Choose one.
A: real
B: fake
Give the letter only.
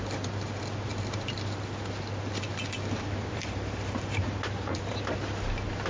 A